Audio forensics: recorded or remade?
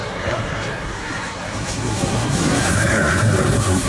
remade